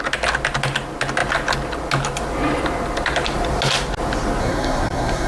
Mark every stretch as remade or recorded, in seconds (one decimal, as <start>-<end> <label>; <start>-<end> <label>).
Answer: 0.0-4.4 recorded; 4.4-5.3 remade

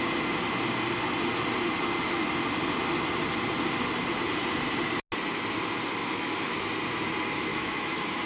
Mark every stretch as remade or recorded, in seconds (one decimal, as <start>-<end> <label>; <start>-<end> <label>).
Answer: 0.0-6.0 recorded; 6.0-6.7 remade; 6.7-7.5 recorded; 7.5-8.3 remade

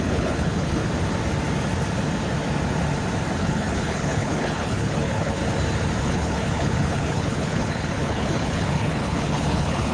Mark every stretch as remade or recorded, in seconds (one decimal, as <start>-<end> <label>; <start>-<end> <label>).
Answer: 0.0-0.8 remade; 0.8-3.4 recorded; 3.4-5.4 remade; 5.4-6.0 recorded; 6.0-9.9 remade

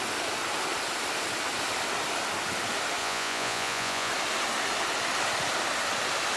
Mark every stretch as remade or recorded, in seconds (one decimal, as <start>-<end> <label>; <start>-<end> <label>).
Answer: 0.0-3.0 recorded; 3.0-4.1 remade; 4.1-6.4 recorded

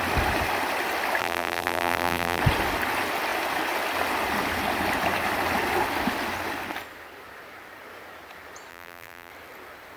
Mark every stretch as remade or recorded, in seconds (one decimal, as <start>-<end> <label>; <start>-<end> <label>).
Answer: 0.0-1.2 recorded; 1.2-2.4 remade; 2.4-8.7 recorded; 8.7-9.3 remade; 9.3-10.0 recorded